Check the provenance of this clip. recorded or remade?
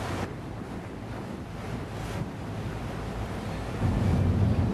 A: recorded